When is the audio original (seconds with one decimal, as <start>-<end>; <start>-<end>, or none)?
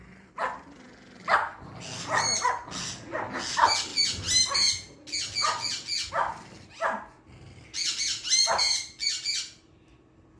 0.0-10.4